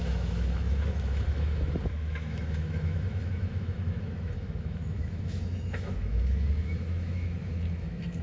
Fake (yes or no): yes